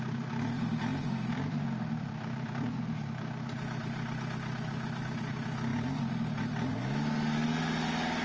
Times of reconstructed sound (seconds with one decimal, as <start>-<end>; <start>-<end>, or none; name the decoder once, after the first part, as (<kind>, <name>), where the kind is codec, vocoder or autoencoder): 0.9-2.7 (vocoder, BigVGAN v2)